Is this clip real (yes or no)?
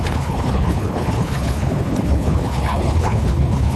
no